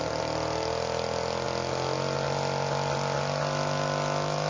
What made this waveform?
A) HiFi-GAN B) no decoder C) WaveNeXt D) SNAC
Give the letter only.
B